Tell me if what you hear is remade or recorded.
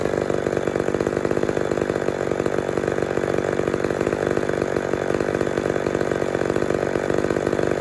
recorded